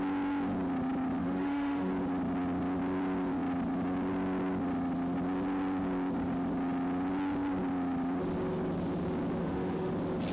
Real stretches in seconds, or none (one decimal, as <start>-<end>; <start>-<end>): 0.0-1.2; 1.9-9.4; 9.9-10.3